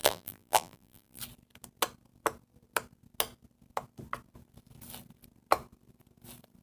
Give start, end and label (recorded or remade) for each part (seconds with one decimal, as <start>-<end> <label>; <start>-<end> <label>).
0.0-1.2 remade; 1.2-6.6 recorded